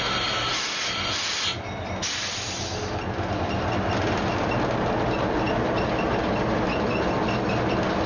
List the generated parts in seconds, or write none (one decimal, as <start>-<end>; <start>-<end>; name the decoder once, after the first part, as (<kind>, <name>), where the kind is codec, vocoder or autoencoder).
none